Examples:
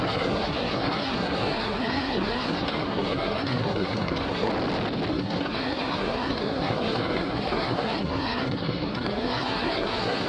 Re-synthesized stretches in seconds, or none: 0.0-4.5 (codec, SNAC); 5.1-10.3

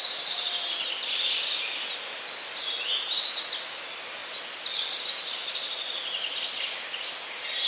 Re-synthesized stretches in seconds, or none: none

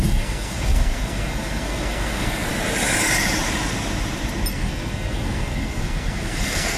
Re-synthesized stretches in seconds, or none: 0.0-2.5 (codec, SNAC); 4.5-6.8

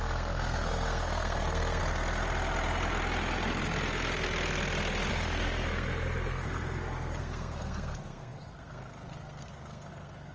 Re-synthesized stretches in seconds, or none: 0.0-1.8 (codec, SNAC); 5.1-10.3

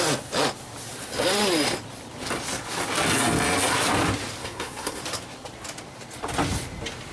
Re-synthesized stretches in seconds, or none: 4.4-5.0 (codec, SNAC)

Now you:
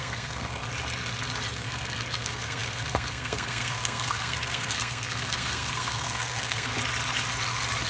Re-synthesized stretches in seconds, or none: 0.0-0.6 (codec, SNAC); 1.5-6.7